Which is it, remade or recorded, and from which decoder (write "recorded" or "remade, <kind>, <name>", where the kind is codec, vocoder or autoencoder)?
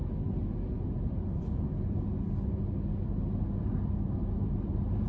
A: recorded